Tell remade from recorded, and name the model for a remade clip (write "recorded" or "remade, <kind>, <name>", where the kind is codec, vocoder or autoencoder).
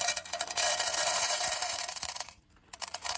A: remade, vocoder, Vocos